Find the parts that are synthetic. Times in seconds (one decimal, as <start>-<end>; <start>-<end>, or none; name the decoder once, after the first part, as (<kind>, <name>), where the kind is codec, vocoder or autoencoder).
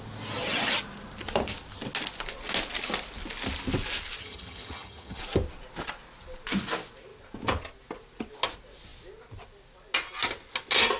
4.2-5.2 (vocoder, HiFi-GAN)